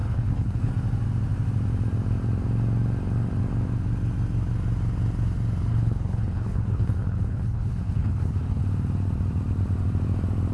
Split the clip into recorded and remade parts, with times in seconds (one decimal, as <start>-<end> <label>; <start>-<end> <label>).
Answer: 0.0-0.7 remade; 0.7-5.7 recorded; 5.7-8.6 remade; 8.6-10.5 recorded